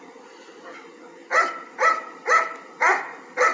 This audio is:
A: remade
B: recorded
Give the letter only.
A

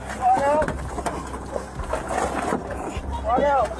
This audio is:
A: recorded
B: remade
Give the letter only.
A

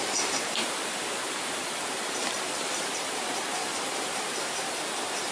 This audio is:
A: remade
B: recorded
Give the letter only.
A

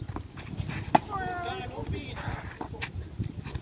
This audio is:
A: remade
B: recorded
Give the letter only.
B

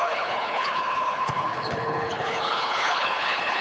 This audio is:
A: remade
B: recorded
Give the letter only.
A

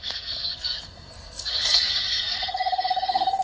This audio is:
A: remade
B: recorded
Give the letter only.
A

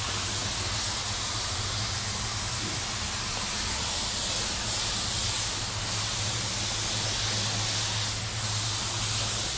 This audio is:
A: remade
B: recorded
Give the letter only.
B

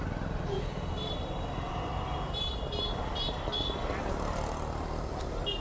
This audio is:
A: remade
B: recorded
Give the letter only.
B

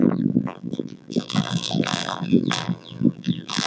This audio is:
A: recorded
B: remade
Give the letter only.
B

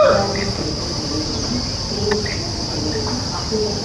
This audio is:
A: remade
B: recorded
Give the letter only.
B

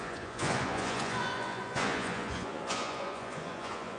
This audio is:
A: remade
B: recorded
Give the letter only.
A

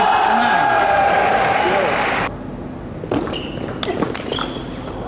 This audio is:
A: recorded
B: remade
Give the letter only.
A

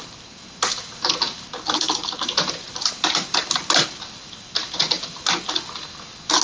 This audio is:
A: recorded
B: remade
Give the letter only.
A